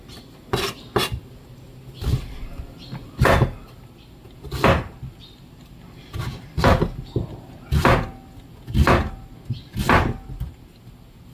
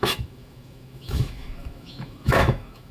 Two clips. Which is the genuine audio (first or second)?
first